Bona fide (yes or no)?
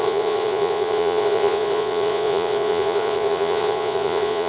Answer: no